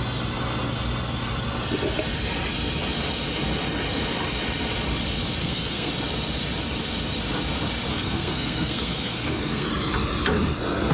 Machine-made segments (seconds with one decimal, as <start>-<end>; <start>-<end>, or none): 5.4-5.9; 7.9-9.7